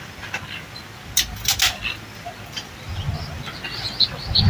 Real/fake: real